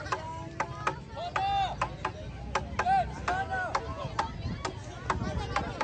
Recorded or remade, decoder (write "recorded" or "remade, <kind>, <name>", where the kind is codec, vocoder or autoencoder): recorded